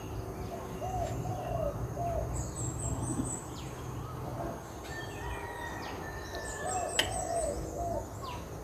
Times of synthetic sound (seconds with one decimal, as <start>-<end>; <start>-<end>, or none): none